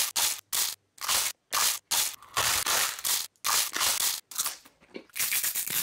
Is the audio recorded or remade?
recorded